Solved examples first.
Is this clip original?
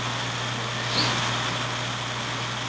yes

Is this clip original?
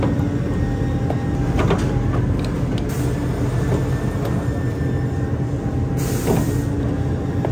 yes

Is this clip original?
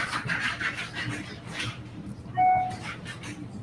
no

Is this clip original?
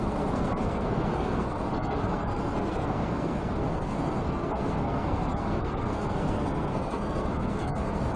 no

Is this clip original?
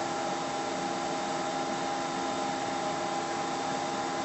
yes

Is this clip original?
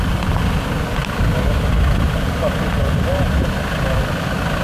yes